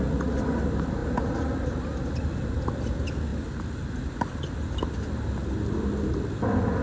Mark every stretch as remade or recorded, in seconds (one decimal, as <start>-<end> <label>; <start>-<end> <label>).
0.0-6.8 recorded